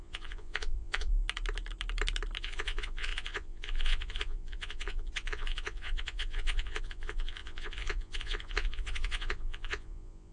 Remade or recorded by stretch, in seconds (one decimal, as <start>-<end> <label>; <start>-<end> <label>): 0.0-1.1 remade; 1.1-2.4 recorded; 2.4-10.3 remade